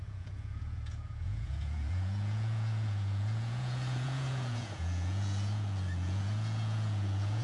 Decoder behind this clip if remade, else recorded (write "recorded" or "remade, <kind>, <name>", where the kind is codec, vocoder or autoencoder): remade, vocoder, Vocos